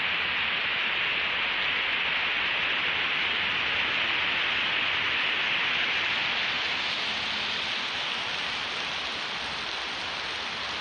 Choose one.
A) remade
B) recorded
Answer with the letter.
B